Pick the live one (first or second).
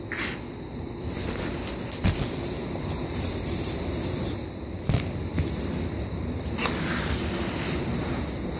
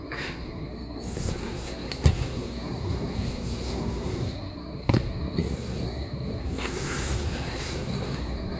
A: first